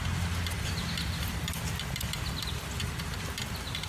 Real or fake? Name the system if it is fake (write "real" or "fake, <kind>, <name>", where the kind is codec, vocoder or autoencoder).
real